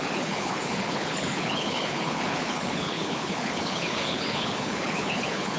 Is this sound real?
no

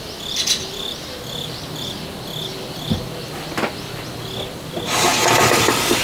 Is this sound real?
yes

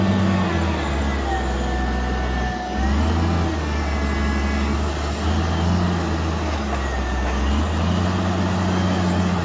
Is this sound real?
yes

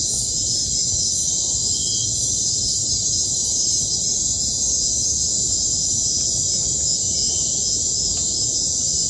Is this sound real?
yes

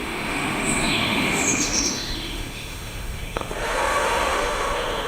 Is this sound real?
no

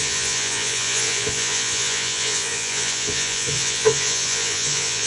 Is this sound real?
no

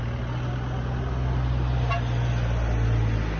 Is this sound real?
yes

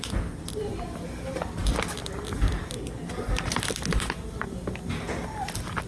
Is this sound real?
yes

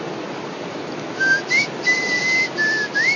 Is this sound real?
no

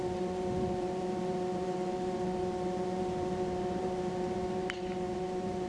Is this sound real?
no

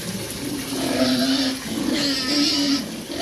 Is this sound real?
yes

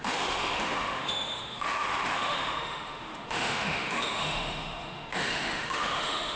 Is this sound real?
no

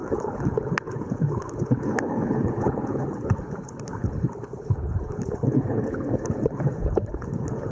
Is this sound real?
no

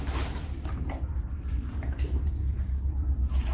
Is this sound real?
no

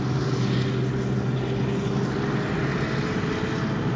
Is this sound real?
yes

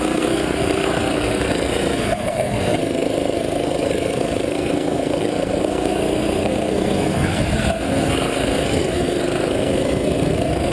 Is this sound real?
no